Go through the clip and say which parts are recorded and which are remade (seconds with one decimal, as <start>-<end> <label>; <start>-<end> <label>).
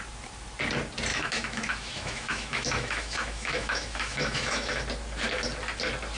0.0-1.1 recorded; 1.1-4.8 remade; 4.8-6.2 recorded